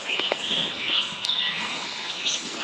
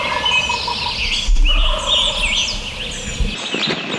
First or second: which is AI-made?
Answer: first